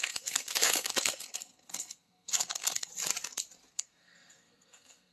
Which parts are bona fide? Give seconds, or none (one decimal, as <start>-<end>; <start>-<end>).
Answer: 2.9-3.7